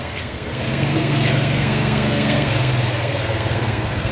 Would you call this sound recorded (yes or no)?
no